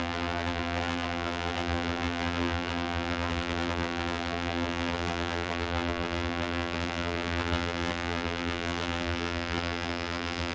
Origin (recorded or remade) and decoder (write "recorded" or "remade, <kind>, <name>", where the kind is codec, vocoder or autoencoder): remade, vocoder, BigVGAN v2